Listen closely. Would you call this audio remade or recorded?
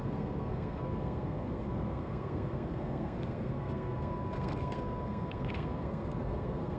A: remade